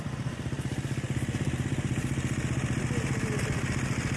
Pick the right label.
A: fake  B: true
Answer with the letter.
B